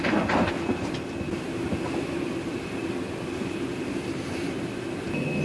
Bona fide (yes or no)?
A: yes